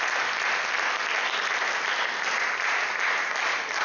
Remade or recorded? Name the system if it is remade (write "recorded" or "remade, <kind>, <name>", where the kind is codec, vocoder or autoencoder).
recorded